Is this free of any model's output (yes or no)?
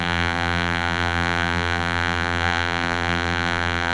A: no